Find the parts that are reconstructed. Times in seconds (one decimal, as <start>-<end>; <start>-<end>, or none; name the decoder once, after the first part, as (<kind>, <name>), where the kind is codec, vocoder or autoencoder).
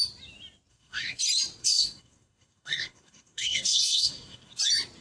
0.7-1.2 (codec, SNAC); 1.6-4.6